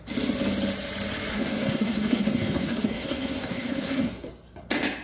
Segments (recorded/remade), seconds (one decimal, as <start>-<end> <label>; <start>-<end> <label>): 0.0-1.3 recorded; 1.3-4.3 remade; 4.3-5.0 recorded